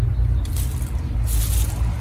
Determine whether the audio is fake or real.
real